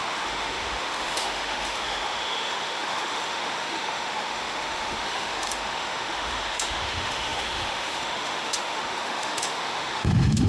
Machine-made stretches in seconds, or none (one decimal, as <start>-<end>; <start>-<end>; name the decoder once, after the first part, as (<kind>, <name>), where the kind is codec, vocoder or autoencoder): 0.0-10.5 (autoencoder, DAC-VAE)